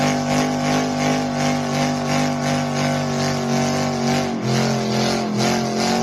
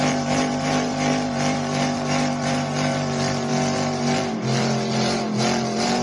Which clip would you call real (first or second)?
first